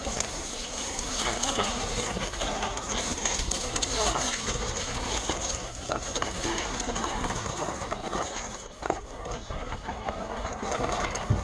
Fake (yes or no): yes